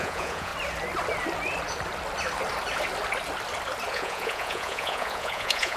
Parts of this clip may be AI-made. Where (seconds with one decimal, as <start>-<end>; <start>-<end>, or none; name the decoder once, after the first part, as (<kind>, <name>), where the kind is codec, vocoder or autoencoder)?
0.0-0.5 (vocoder, Vocos); 3.9-5.8